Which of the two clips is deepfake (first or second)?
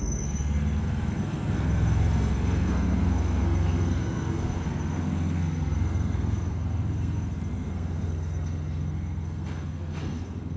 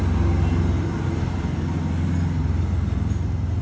first